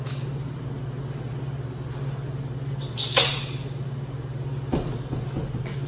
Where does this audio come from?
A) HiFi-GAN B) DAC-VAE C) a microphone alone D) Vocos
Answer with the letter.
C